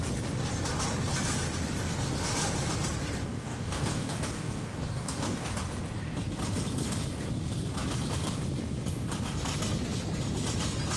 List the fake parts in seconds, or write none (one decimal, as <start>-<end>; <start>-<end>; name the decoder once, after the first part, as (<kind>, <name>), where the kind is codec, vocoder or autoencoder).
3.2-5.5 (codec, DAC)